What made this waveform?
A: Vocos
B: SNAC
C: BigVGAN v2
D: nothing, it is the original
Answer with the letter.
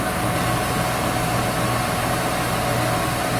D